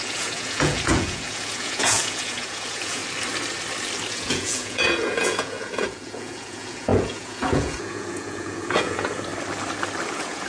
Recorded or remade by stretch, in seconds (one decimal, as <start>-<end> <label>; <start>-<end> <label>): 0.0-3.0 remade; 3.0-4.1 recorded; 4.1-9.3 remade; 9.3-10.1 recorded; 10.1-10.5 remade